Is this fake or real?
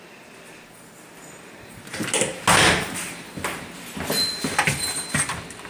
real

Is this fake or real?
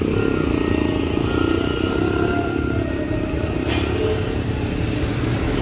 real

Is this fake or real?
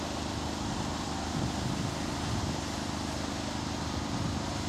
real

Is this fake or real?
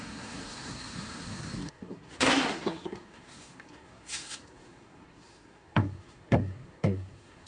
fake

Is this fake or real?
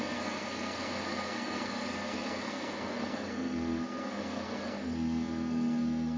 fake